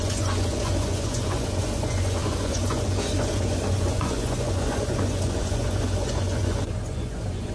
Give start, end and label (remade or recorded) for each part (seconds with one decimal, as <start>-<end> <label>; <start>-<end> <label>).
0.0-7.5 remade